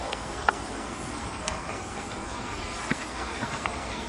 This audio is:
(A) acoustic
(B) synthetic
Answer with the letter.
B